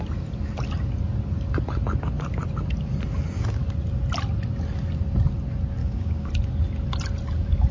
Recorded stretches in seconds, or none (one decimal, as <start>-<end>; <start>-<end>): 0.0-5.8; 6.3-7.7